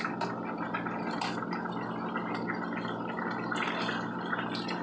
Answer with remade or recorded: recorded